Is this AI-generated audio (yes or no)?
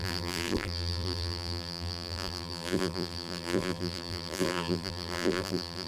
yes